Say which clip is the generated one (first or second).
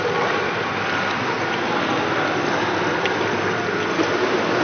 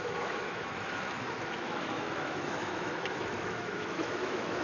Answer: second